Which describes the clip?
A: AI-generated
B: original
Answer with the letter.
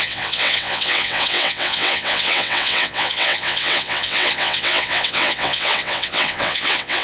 A